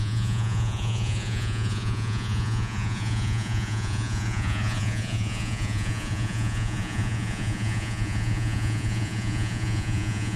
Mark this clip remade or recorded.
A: remade